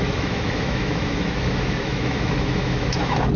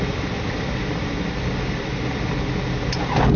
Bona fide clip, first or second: second